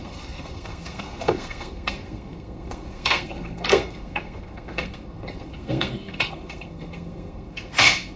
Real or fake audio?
fake